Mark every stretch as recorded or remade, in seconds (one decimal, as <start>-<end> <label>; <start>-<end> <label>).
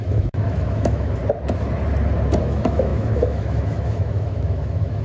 0.0-1.2 remade; 1.2-2.4 recorded; 2.4-5.0 remade